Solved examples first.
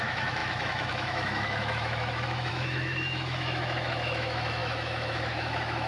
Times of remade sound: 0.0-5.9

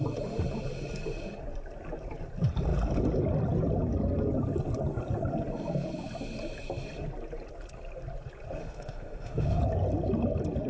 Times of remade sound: 8.6-9.6

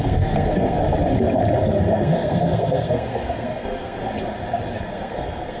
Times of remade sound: 0.0-0.8; 1.6-4.0; 4.7-5.6

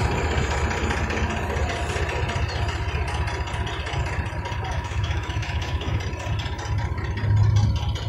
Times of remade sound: 4.7-6.0

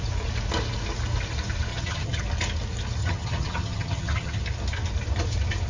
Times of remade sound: 1.7-2.2; 3.0-4.4

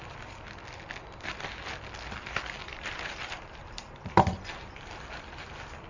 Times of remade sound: 2.6-4.1

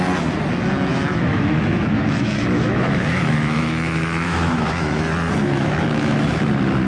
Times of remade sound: 0.9-5.0; 5.4-6.4

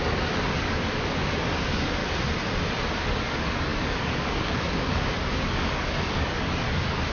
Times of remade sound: 0.0-2.0; 3.1-7.1